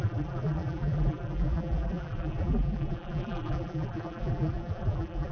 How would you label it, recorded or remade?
remade